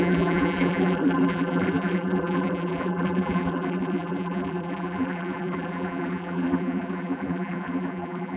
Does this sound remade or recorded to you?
remade